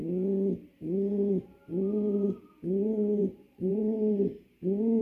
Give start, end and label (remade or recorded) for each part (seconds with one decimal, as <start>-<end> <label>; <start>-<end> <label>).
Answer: 0.0-0.6 recorded; 0.6-5.0 remade